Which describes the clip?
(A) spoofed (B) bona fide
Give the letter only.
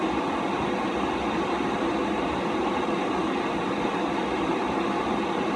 B